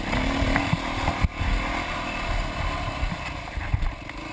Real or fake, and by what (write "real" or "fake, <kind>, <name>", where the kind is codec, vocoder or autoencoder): real